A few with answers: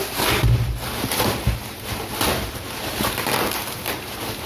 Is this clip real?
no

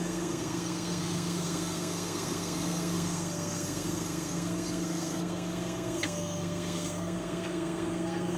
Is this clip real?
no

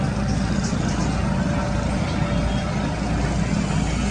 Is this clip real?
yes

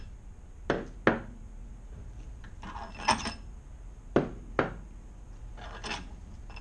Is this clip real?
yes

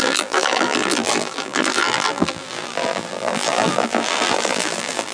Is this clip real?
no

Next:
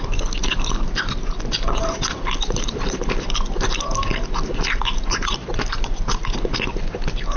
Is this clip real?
yes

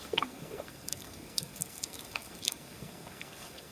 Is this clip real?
no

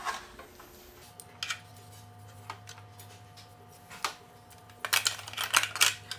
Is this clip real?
yes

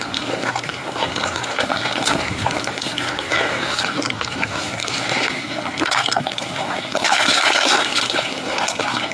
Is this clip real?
no